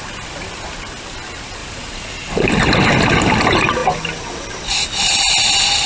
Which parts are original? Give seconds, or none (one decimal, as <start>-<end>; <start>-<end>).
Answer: 0.0-5.9